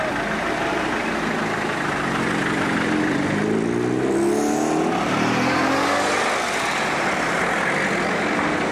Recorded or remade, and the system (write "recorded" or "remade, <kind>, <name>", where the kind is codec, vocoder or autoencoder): recorded